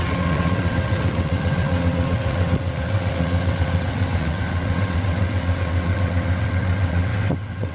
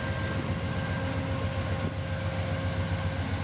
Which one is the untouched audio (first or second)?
second